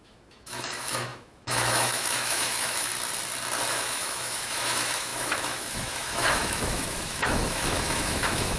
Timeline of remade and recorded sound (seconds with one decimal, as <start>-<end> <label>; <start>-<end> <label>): 0.0-2.9 remade; 2.9-3.7 recorded; 3.7-8.6 remade